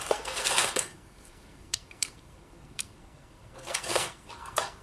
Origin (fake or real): fake